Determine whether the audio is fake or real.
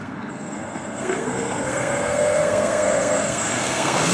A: fake